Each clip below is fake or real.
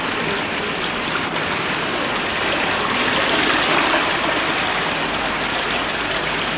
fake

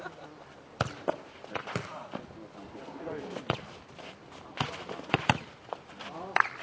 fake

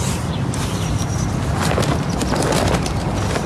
fake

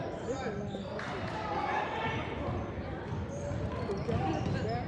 real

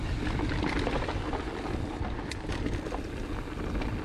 real